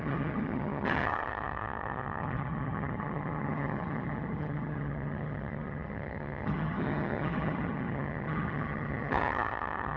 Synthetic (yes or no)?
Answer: yes